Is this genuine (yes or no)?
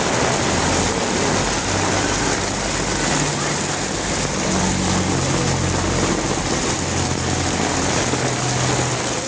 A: yes